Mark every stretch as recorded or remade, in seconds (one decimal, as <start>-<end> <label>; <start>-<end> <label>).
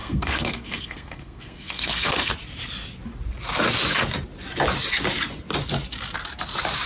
0.0-2.3 remade; 2.3-6.9 recorded